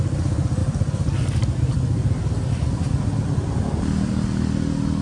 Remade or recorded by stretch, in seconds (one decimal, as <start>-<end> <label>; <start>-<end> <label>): 0.0-5.0 recorded

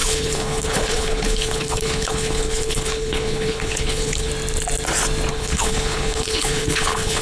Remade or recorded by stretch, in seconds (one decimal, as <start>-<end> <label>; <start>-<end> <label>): 0.0-4.3 remade; 4.3-5.3 recorded; 5.3-7.2 remade

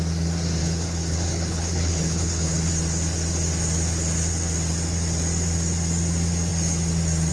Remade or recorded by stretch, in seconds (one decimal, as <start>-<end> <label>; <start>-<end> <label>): 0.0-0.6 recorded; 0.6-2.7 remade; 2.7-7.3 recorded

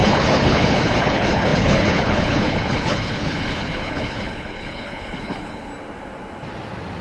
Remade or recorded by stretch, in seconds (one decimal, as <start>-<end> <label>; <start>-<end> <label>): 0.0-5.7 remade; 5.7-7.0 recorded

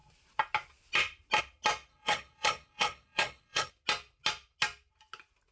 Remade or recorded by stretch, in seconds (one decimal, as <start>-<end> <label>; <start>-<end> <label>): 0.0-1.9 recorded; 1.9-3.7 remade; 3.7-5.5 recorded